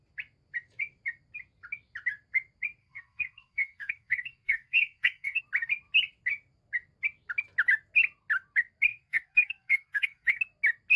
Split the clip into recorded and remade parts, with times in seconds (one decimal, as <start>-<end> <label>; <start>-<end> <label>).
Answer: 0.0-2.8 recorded; 2.8-5.4 remade; 5.4-8.9 recorded; 8.9-10.4 remade; 10.4-11.0 recorded